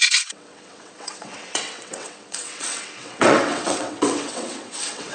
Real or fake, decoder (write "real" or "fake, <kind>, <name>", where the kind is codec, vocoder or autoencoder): fake, vocoder, WaveNeXt